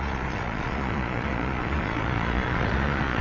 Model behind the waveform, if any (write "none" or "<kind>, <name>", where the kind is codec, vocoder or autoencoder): vocoder, Vocos